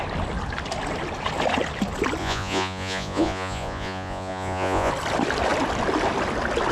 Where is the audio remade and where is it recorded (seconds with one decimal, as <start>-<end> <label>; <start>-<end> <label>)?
0.0-2.2 recorded; 2.2-4.9 remade; 4.9-6.7 recorded